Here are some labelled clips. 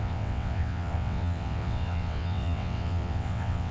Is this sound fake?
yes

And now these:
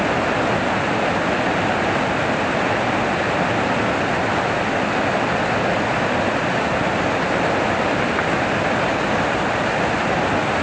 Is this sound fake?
no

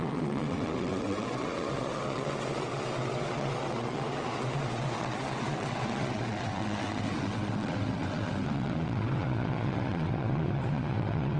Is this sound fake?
yes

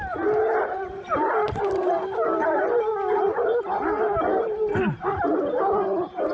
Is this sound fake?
no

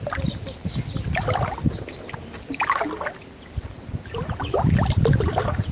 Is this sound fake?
no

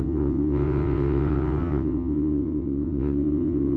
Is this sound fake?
yes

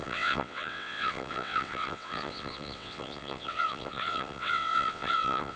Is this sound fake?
yes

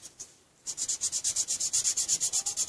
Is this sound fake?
no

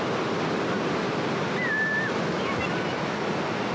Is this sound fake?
no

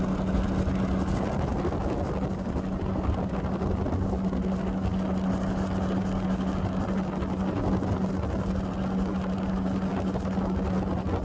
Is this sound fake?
no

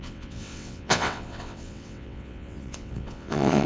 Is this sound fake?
yes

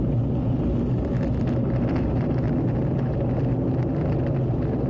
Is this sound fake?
no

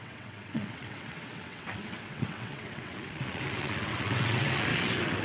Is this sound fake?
yes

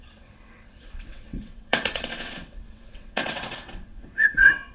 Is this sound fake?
yes